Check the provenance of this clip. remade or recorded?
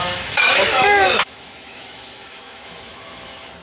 remade